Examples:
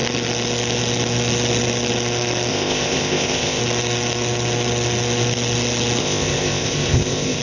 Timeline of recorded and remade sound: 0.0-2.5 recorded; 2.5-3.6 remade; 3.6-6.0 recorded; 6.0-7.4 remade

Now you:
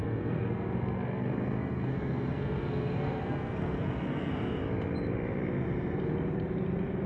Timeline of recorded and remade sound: 0.0-4.3 remade; 4.3-7.1 recorded

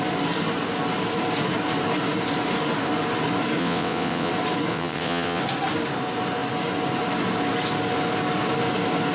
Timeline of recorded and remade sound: 0.0-3.6 recorded; 3.6-4.3 remade; 4.3-4.7 recorded; 4.7-5.4 remade; 5.4-9.1 recorded

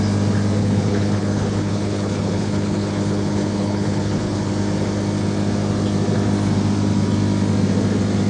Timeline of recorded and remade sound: 0.0-0.6 recorded; 0.6-4.5 remade; 4.5-8.3 recorded